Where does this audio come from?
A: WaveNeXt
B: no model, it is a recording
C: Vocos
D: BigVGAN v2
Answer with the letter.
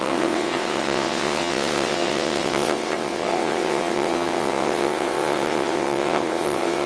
A